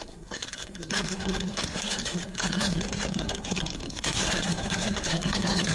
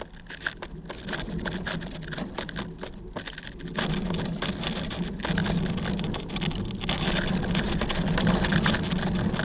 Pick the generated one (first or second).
first